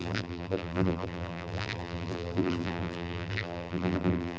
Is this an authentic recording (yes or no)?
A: no